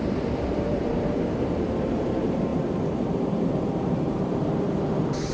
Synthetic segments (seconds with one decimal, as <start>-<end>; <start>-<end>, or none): 0.0-5.3